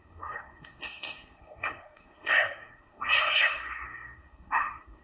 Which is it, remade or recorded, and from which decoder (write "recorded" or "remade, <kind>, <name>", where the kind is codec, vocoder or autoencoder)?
remade, codec, SNAC